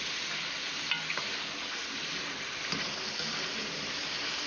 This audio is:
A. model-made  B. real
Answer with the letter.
B